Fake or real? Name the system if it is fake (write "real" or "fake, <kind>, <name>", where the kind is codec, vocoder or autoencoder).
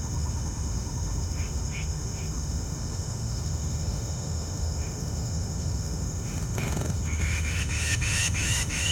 fake, autoencoder, DAC-VAE